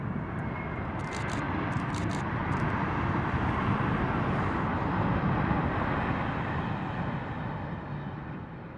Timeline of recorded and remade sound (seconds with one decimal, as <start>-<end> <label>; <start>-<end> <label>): 0.0-8.8 recorded